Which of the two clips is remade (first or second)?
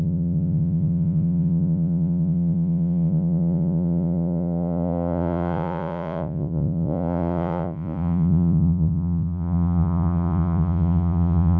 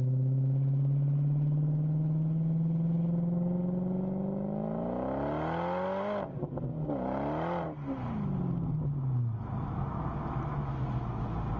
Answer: first